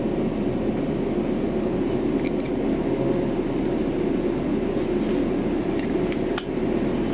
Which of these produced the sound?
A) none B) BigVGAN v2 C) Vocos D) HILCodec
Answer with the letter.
A